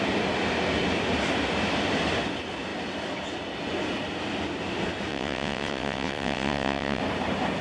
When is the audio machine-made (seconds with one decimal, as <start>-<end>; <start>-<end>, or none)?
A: 5.1-7.0